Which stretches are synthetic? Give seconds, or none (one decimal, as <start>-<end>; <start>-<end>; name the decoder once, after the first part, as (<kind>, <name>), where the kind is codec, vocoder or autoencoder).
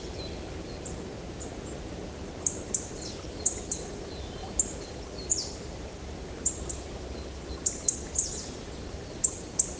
none